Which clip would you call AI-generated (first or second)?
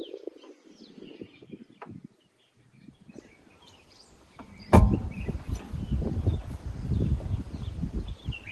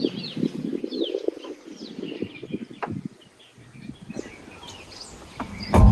first